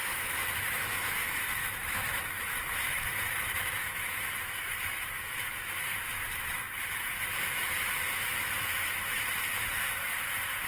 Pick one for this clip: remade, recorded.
remade